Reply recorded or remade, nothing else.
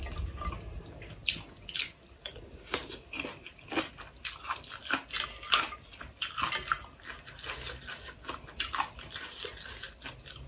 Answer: recorded